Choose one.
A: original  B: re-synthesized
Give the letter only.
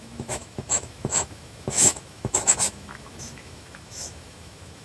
B